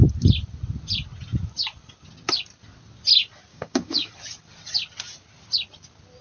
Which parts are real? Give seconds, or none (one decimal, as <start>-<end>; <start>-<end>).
0.0-3.5; 4.1-6.2